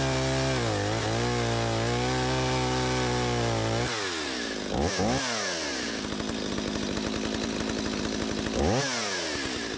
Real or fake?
real